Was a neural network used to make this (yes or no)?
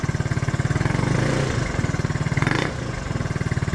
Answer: yes